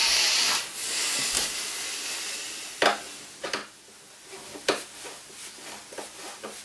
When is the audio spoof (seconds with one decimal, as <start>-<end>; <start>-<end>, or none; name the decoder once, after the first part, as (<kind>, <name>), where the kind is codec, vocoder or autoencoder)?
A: none